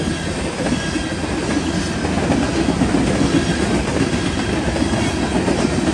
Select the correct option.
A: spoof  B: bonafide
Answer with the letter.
B